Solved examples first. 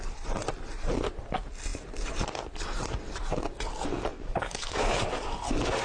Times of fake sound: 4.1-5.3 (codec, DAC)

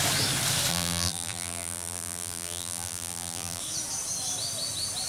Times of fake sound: 0.7-3.6 (vocoder, BigVGAN v2)

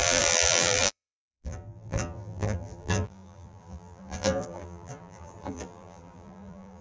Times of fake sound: 0.0-6.8 (vocoder, BigVGAN v2)

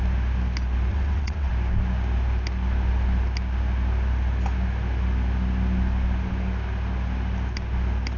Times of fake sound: 0.9-1.5 (vocoder, WaveNeXt)

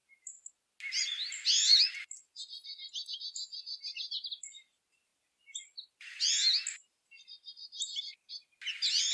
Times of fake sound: none

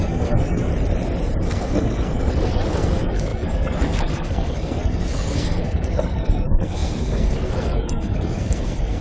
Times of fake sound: 0.0-0.7 (codec, SNAC); 1.4-9.0